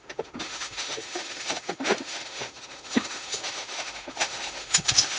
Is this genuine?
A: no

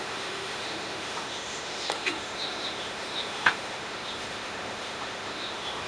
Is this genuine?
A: no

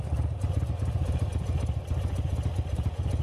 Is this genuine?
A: yes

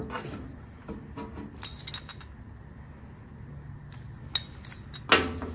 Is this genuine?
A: yes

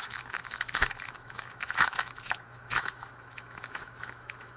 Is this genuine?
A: no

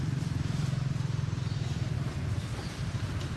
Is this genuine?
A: yes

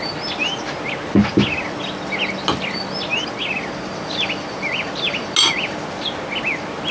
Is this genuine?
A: yes